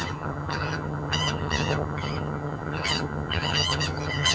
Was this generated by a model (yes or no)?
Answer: yes